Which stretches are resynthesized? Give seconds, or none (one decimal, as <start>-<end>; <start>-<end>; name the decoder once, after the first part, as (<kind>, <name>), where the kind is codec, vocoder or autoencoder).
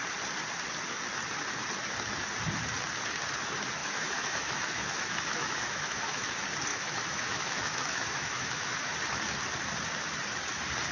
3.8-6.3 (autoencoder, DAC-VAE); 6.7-8.9